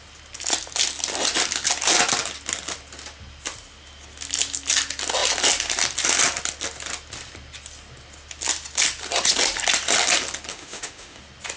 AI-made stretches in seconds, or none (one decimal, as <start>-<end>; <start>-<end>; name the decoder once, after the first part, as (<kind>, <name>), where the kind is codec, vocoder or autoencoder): 10.5-11.2 (autoencoder, DAC-VAE)